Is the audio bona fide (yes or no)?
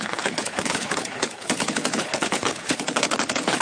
no